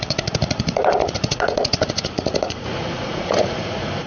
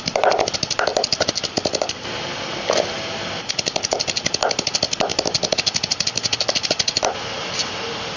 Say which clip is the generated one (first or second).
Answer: first